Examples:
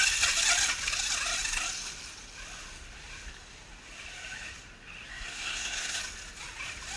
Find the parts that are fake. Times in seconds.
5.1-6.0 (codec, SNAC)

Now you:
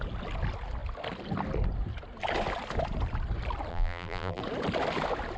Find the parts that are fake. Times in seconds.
3.7-4.4 (vocoder, BigVGAN v2)

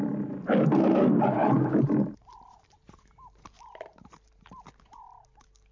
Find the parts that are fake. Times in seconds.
1.4-4.8 (vocoder, BigVGAN v2)

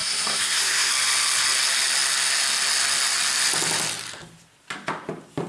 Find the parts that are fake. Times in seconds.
0.0-0.9 (codec, SNAC)

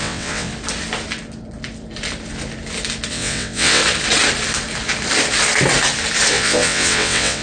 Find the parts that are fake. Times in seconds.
0.0-0.5 (vocoder, WaveNeXt); 3.1-3.8; 6.3-7.4

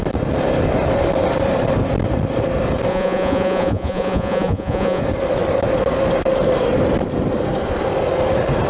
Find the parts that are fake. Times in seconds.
2.9-5.0 (vocoder, Vocos)

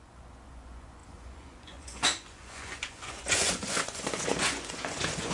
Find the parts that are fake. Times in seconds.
0.0-5.3 (vocoder, Vocos)